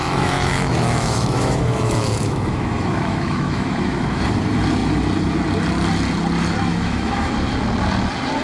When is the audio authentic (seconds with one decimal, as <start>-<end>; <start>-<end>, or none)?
4.2-6.7; 7.3-8.4

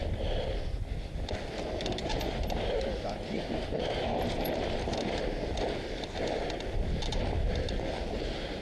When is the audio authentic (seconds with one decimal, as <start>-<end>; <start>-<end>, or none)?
0.0-8.6

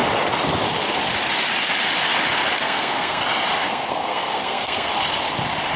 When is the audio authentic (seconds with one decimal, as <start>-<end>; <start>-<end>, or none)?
0.0-2.6; 3.2-3.6; 4.9-5.8

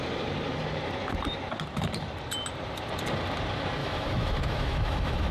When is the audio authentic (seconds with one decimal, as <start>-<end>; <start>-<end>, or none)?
0.0-3.8